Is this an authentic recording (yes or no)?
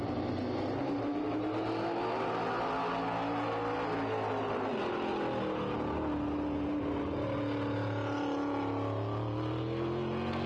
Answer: yes